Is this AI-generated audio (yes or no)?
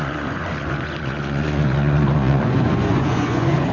yes